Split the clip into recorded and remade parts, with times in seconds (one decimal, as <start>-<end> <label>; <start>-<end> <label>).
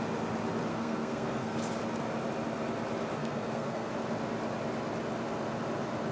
0.0-0.7 recorded; 0.7-1.6 remade; 1.6-3.2 recorded; 3.2-3.9 remade; 3.9-6.1 recorded